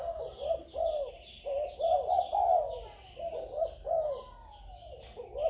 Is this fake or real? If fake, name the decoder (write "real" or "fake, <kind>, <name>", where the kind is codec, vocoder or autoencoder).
real